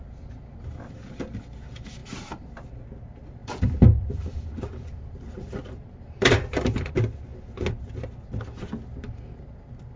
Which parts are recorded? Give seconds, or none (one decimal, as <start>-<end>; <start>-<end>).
0.0-2.0; 2.7-3.4; 6.9-10.0